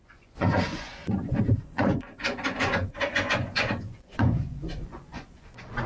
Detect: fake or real fake